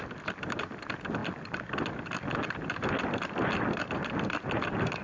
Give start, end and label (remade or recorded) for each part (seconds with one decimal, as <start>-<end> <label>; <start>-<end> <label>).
0.0-5.0 recorded